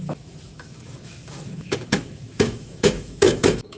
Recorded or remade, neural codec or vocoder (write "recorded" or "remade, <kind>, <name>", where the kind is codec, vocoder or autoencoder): remade, autoencoder, DAC-VAE